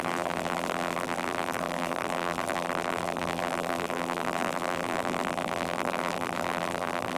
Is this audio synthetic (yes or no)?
yes